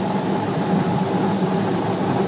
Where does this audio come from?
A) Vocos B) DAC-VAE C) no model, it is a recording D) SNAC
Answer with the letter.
C